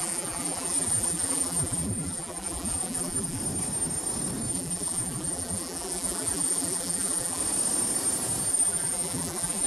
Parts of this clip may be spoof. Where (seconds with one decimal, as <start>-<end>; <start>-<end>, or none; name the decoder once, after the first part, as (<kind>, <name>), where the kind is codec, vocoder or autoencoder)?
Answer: 0.0-3.4 (vocoder, BigVGAN v2); 4.5-7.4; 8.5-9.7